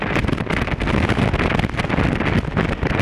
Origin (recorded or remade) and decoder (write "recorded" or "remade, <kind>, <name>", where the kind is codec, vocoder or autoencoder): recorded